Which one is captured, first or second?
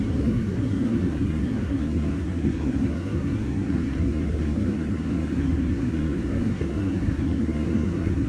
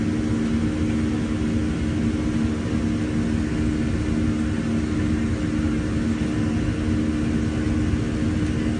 second